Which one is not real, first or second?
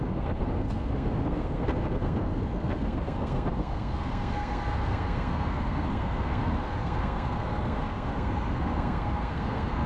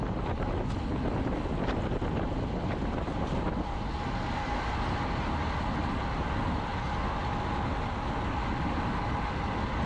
first